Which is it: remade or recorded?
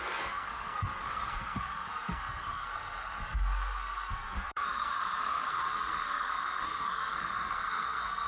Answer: remade